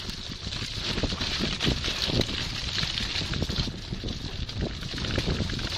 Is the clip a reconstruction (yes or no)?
no